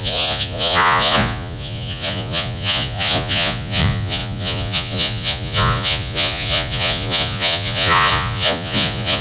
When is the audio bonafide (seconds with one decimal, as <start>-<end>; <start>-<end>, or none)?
none